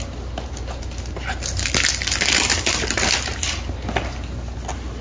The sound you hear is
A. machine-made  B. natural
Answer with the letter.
B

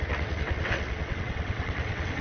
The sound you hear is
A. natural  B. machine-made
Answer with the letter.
B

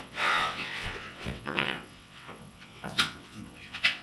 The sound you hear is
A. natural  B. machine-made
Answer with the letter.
B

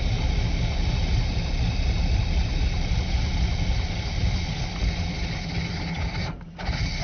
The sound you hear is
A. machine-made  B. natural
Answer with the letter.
B